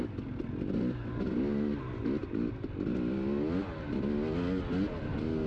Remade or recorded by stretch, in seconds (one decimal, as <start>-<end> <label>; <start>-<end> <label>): 0.0-5.5 recorded